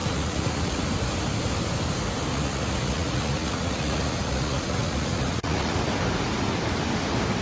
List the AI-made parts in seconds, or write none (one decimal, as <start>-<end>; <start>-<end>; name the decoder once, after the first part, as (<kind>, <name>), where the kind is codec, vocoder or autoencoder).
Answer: 0.0-0.8 (vocoder, Vocos); 2.3-5.8